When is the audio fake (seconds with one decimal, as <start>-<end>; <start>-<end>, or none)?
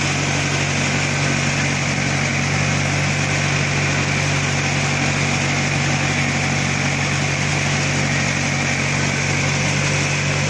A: none